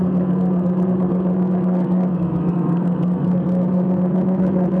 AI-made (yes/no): yes